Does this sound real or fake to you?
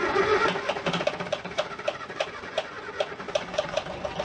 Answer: fake